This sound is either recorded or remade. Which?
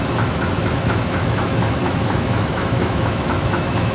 remade